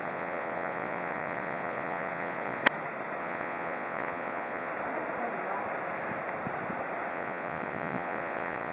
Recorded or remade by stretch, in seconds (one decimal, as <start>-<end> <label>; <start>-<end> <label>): 0.0-2.6 remade; 2.6-3.2 recorded; 3.2-4.7 remade; 4.7-7.1 recorded; 7.1-8.7 remade